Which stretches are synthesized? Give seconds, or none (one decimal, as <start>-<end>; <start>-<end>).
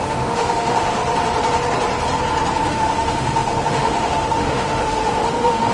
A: 0.0-1.0; 2.7-5.7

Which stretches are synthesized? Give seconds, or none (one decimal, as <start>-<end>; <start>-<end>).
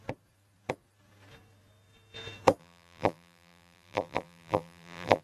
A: 2.6-5.2